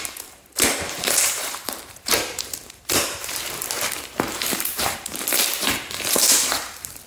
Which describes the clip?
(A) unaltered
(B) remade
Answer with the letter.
B